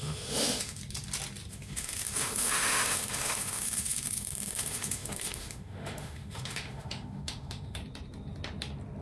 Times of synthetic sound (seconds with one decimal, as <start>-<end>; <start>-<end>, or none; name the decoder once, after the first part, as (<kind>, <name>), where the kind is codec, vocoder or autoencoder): 0.0-0.8 (autoencoder, DAC-VAE); 1.5-7.8